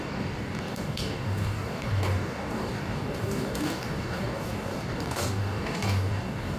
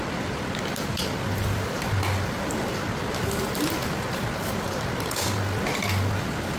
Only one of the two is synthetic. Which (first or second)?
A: first